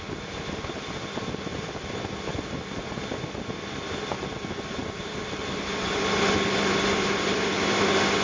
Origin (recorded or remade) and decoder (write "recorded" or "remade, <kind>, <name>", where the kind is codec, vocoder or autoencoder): recorded